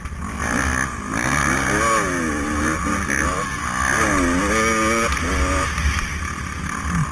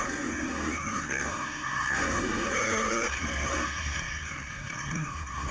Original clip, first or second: first